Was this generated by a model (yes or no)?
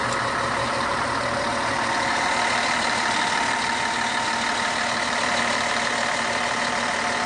no